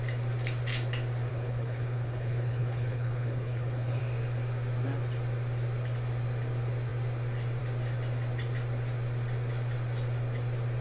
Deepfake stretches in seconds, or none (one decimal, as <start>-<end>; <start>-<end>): 1.3-4.0